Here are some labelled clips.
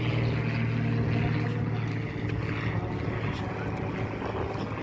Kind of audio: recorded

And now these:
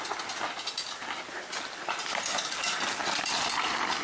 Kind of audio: recorded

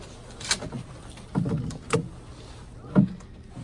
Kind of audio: recorded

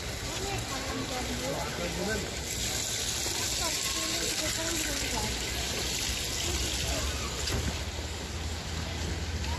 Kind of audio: recorded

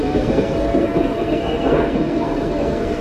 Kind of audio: remade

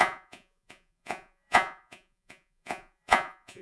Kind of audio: remade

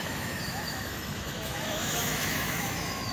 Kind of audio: remade